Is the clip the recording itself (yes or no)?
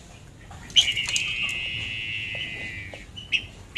yes